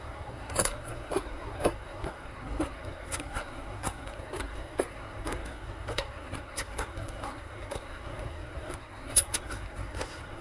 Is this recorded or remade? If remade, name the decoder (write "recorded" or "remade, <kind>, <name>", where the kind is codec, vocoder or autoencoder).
remade, codec, SNAC